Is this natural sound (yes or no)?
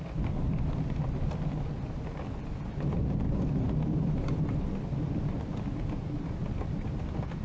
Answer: yes